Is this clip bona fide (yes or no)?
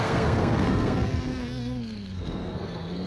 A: no